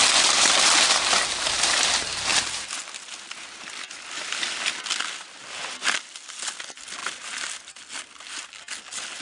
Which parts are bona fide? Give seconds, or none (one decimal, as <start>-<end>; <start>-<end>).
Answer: 0.0-9.2